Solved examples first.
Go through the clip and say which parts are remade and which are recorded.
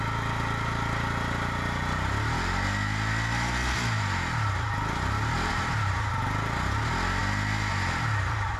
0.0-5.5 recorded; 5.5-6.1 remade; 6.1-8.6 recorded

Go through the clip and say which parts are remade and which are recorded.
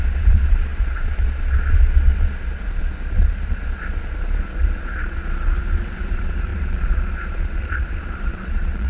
0.0-8.9 remade